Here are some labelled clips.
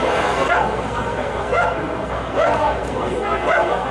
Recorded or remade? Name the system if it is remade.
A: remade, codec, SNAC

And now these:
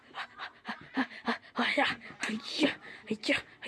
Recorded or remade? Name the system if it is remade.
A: recorded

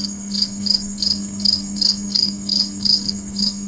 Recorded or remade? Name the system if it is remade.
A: remade, codec, SNAC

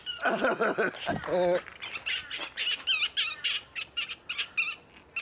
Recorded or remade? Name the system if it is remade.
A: recorded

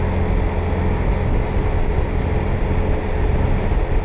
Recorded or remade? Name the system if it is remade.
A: recorded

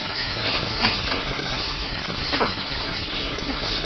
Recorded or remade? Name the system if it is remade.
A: remade, codec, SNAC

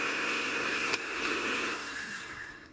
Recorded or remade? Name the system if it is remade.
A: remade, codec, SNAC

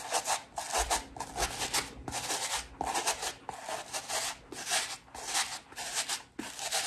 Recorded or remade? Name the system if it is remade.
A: recorded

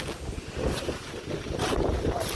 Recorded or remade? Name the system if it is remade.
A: recorded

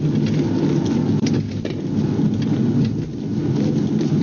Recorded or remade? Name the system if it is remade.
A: recorded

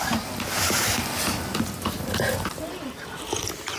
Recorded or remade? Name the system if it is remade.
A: recorded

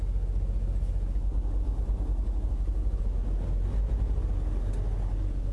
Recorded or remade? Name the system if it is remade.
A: recorded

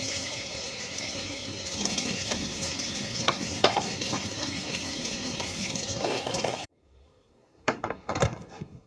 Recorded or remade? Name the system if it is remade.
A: remade, codec, SNAC